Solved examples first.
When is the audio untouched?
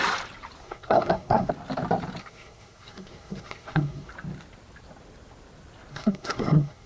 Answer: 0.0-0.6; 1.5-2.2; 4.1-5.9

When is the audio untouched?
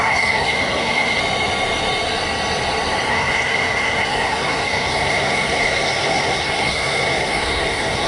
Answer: 1.2-3.1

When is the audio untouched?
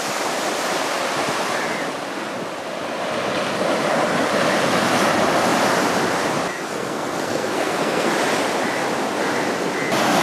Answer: 0.0-6.5; 8.1-10.2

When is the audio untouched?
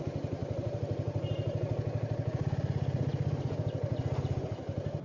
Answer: 0.0-5.0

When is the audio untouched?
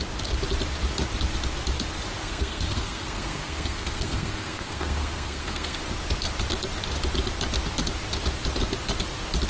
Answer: 0.0-2.2; 5.8-9.5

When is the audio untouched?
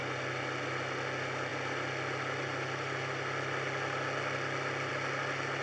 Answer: 0.0-5.6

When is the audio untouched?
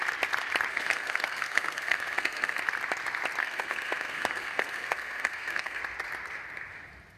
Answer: 0.0-0.7; 2.6-3.4; 5.8-7.2